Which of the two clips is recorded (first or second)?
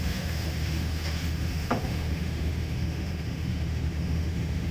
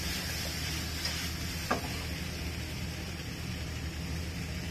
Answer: second